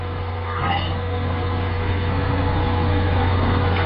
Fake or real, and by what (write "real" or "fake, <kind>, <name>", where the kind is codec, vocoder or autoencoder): fake, codec, SNAC